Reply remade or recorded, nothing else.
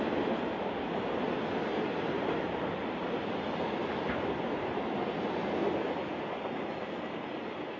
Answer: recorded